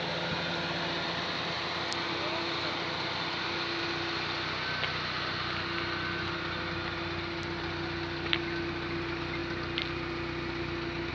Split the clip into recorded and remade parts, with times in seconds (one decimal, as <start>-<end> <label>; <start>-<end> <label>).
0.0-11.1 recorded

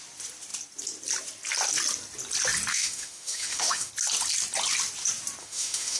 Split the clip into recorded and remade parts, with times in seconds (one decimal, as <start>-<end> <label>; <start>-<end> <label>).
0.0-2.7 recorded; 2.7-3.9 remade; 3.9-5.4 recorded; 5.4-6.0 remade

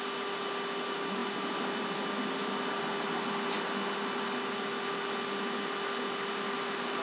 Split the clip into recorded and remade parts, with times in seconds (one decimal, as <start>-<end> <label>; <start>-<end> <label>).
0.0-7.0 recorded